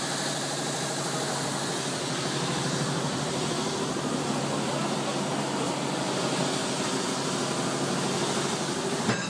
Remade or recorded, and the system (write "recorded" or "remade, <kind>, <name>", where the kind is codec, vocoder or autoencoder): recorded